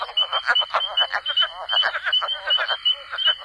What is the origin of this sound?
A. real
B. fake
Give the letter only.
A